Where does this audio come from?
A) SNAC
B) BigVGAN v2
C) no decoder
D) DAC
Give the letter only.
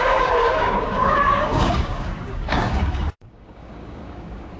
D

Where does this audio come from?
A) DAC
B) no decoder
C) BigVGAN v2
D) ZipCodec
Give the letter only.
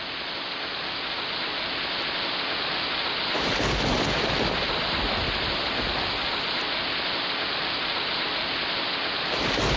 B